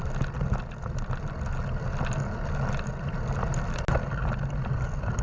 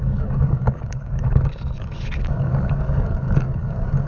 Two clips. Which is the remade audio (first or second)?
second